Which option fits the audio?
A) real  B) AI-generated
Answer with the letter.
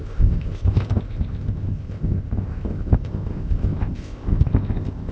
B